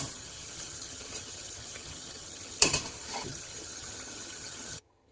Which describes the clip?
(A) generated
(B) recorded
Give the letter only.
A